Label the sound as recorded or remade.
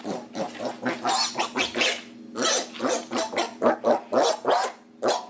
recorded